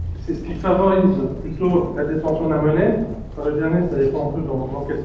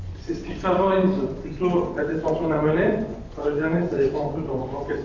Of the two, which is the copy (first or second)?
second